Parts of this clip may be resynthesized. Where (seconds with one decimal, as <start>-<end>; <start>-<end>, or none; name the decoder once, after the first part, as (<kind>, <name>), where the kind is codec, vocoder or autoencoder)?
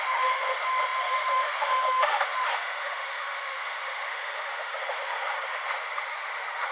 0.0-6.7 (autoencoder, DAC-VAE)